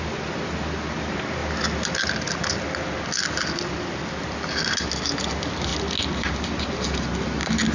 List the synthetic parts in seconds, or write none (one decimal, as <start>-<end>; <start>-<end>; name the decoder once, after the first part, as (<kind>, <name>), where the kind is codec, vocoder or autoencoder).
1.4-2.1 (vocoder, BigVGAN v2)

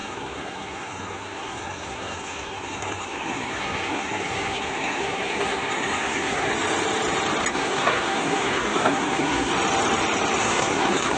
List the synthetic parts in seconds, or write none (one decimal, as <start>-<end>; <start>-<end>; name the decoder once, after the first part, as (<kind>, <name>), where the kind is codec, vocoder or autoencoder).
0.0-6.5 (codec, SNAC); 7.5-9.5; 10.4-11.2

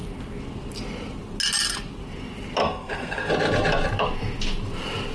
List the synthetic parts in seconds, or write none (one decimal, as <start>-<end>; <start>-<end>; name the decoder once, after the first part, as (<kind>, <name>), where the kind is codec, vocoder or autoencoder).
2.6-3.3 (codec, SNAC)

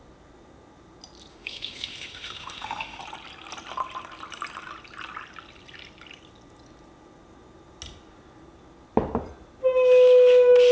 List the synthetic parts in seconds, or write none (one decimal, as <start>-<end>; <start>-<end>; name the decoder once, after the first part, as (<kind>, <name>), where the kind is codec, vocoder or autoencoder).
1.3-3.0 (autoencoder, DAC-VAE)

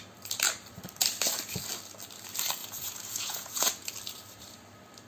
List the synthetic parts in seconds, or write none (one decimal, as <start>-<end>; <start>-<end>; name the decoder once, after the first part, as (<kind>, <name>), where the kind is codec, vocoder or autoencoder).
2.6-3.9 (vocoder, Vocos)

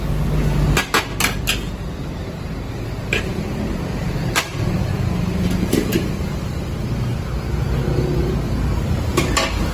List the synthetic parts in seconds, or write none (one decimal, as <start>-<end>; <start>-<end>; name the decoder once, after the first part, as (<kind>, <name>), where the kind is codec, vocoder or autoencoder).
3.1-6.3 (vocoder, BigVGAN v2)

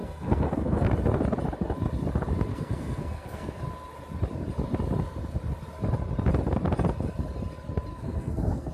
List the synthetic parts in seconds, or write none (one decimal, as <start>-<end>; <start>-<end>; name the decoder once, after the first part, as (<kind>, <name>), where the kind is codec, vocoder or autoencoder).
0.0-0.9 (codec, SNAC); 2.5-3.6; 7.9-8.7

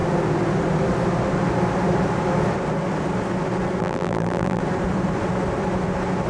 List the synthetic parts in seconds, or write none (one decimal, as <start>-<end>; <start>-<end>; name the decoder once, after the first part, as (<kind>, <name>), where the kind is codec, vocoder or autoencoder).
3.8-4.6 (vocoder, BigVGAN v2)